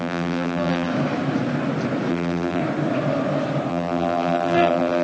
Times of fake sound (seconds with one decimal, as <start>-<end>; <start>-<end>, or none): 0.0-0.9; 2.1-2.6; 3.7-5.0